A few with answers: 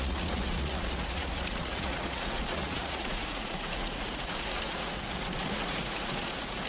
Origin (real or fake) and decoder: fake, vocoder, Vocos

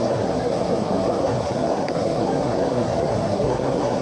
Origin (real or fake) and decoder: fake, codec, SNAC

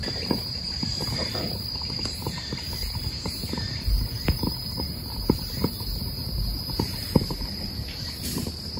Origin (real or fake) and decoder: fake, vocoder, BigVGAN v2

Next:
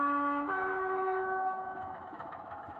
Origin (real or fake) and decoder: fake, autoencoder, DAC-VAE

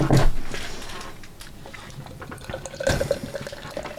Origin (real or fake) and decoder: real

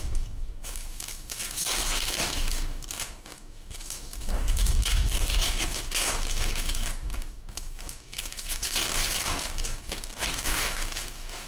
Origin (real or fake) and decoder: fake, codec, DAC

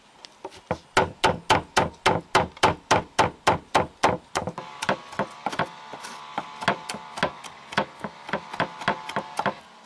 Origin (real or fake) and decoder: real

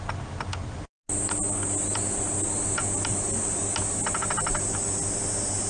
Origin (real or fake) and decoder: real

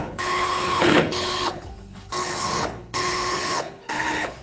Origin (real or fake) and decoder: fake, codec, HILCodec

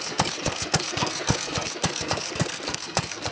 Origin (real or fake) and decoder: fake, codec, SNAC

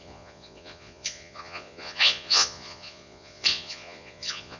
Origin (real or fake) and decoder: fake, vocoder, Vocos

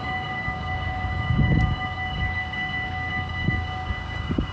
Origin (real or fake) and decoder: fake, codec, DAC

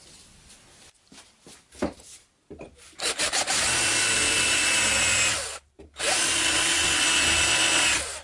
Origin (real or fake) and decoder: real